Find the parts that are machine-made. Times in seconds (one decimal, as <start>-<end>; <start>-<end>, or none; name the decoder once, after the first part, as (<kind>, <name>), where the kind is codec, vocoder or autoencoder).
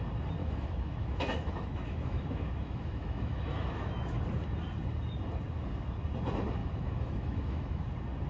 0.4-4.2 (autoencoder, DAC-VAE); 6.6-7.8